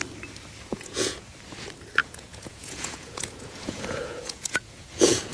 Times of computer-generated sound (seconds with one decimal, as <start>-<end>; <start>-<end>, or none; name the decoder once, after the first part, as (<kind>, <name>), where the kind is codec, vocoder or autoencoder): 0.7-1.3 (vocoder, Vocos); 2.0-5.3